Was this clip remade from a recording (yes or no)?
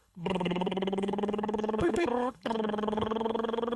yes